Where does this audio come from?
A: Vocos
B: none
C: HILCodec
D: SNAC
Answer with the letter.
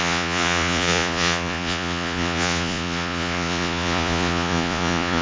A